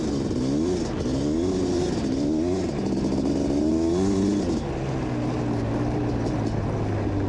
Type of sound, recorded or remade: recorded